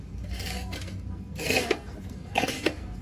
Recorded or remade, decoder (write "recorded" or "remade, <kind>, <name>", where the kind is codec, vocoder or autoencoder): remade, codec, SNAC